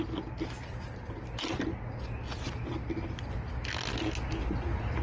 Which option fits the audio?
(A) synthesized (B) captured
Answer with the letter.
B